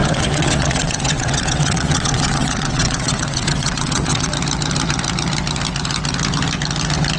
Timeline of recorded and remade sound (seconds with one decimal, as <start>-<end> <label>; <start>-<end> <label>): 0.0-4.3 remade; 4.3-7.2 recorded